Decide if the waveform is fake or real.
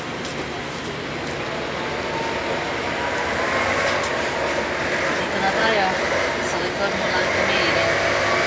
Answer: real